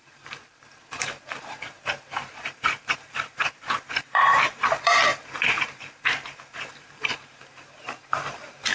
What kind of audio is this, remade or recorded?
remade